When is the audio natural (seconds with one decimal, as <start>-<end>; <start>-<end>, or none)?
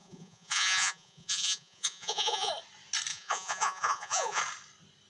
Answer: 2.5-3.1; 4.4-5.1